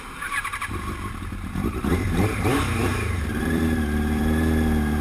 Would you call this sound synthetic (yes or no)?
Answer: yes